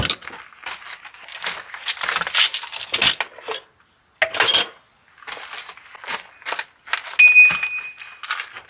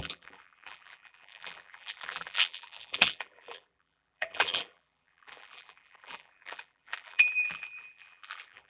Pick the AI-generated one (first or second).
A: second